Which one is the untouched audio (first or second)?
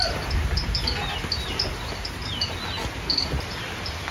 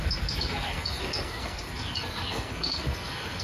first